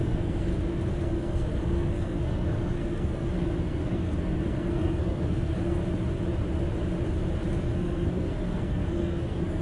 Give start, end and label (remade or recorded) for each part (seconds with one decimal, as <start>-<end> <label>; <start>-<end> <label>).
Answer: 0.0-0.5 remade; 0.5-1.0 recorded; 1.0-5.8 remade; 5.8-7.6 recorded; 7.6-9.6 remade